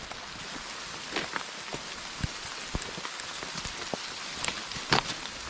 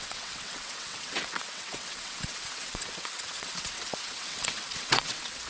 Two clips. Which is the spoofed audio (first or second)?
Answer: second